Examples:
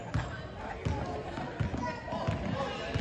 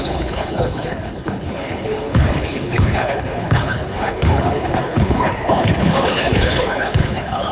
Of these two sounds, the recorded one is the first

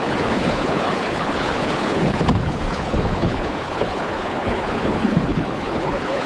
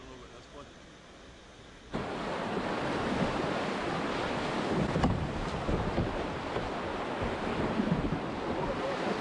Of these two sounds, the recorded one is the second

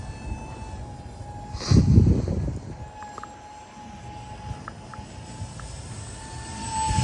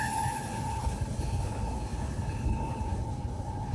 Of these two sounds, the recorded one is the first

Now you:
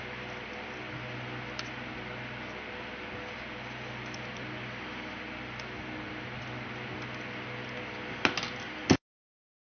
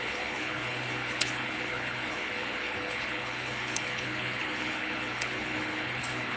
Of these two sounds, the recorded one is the first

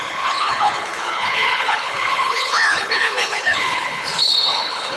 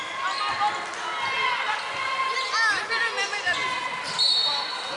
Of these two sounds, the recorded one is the second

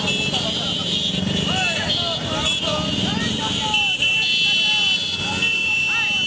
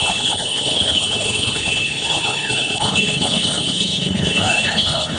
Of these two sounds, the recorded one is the first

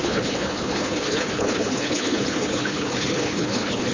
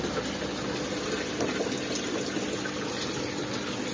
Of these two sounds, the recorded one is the second